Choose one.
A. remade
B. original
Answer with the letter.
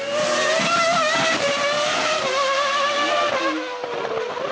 B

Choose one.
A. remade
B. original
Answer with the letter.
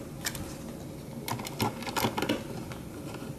B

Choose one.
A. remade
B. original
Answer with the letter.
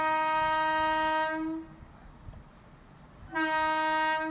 B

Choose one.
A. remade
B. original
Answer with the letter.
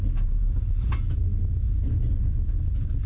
B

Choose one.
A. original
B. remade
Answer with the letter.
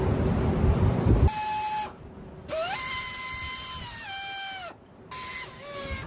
A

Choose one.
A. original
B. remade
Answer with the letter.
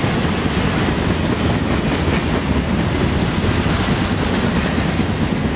A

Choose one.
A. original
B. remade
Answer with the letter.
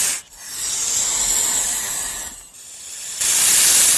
A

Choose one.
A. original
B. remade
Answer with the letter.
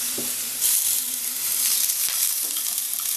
B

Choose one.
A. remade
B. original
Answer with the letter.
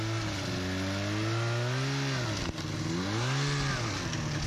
B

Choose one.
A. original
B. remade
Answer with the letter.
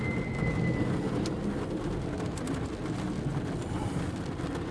A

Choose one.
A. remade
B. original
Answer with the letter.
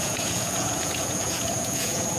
A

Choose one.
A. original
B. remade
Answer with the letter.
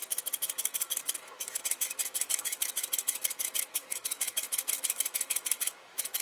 B